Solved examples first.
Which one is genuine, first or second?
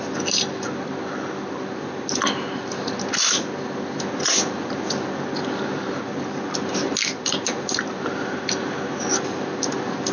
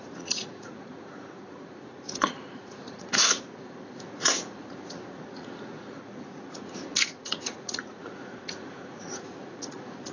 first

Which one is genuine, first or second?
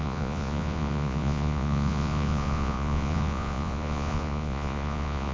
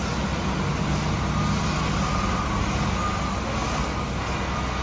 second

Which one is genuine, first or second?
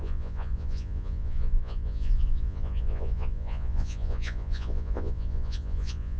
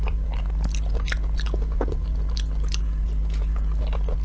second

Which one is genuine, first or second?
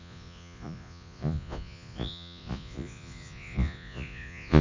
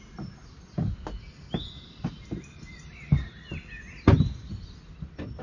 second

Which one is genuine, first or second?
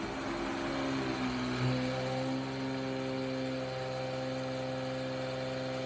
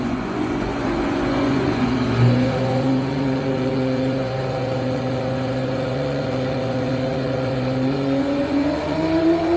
first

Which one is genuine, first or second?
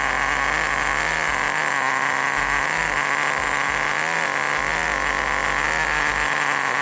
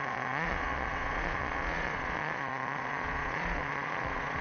first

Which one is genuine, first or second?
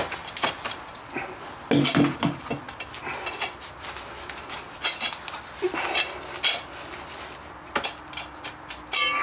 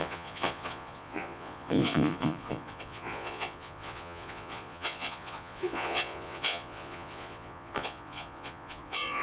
first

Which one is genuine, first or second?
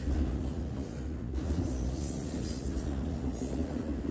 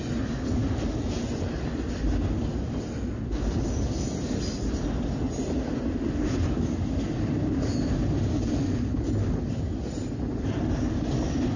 second